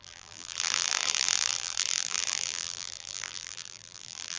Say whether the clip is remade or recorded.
remade